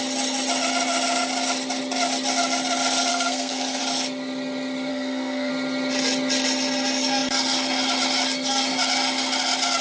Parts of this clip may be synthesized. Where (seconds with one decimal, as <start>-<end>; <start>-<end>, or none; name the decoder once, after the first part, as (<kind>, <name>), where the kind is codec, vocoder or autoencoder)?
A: 3.1-3.8 (codec, SNAC); 4.9-5.5